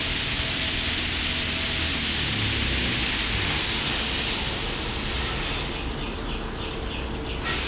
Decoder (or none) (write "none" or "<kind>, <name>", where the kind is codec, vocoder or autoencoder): none